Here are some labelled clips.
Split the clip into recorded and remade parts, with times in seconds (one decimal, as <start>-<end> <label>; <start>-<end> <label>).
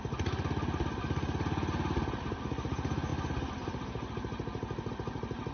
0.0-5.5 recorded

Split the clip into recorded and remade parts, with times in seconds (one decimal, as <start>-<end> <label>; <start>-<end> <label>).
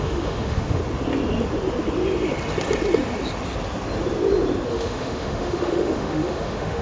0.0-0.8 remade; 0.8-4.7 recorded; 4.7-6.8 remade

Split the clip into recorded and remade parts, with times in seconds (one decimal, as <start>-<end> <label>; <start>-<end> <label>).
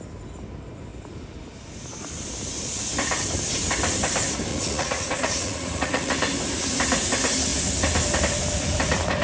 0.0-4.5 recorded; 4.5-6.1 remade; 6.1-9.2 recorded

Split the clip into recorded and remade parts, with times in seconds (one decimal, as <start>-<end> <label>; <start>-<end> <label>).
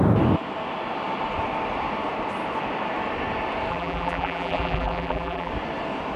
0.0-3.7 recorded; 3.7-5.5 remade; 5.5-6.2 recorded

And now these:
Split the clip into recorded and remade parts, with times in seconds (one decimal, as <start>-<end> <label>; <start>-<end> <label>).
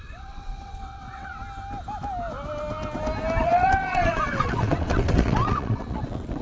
0.0-1.4 remade; 1.4-3.4 recorded; 3.4-6.4 remade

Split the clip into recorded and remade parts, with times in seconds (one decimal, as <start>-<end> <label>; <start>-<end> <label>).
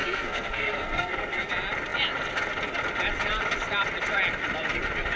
0.0-1.5 remade; 1.5-5.2 recorded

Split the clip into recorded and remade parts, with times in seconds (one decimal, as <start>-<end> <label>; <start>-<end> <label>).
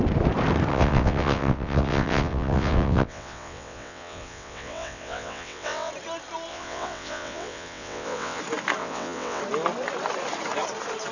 0.0-0.7 recorded; 0.7-5.9 remade; 5.9-6.5 recorded; 6.5-8.4 remade; 8.4-8.8 recorded; 8.8-9.4 remade; 9.4-11.1 recorded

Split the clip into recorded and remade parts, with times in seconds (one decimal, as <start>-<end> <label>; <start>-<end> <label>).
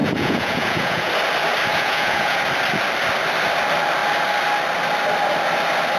0.0-1.1 remade; 1.1-1.7 recorded; 1.7-2.4 remade; 2.4-6.0 recorded